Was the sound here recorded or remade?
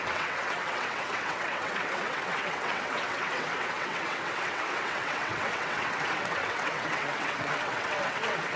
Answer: remade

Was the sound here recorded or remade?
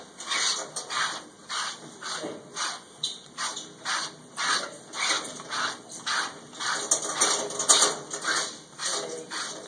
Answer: recorded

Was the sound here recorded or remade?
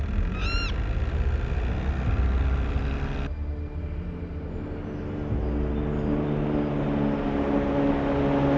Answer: recorded